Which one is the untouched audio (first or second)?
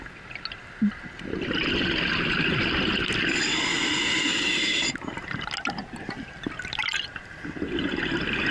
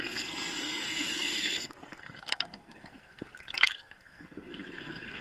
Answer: first